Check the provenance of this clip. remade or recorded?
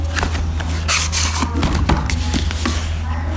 recorded